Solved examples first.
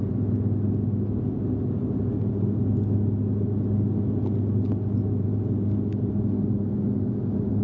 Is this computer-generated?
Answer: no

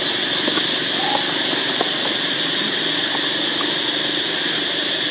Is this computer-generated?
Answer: no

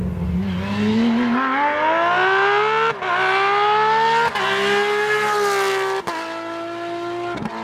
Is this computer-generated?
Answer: no